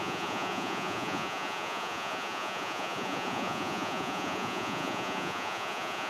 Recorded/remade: remade